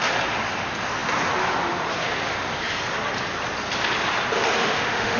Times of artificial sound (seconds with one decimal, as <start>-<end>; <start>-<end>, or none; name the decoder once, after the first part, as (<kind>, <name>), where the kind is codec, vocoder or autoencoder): 4.6-5.2 (autoencoder, DAC-VAE)